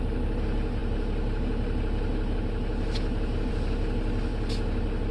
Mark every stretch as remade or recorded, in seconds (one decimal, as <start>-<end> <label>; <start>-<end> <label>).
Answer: 0.0-5.1 recorded